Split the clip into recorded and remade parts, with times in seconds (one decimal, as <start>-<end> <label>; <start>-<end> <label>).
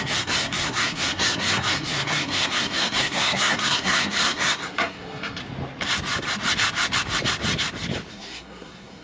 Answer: 0.0-5.4 remade; 5.4-8.1 recorded; 8.1-9.0 remade